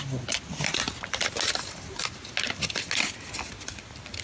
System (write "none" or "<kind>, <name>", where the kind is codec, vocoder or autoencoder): none